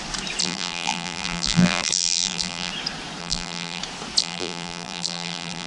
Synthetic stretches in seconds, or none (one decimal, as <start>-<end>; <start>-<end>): 0.4-2.7; 3.2-3.8; 4.2-5.7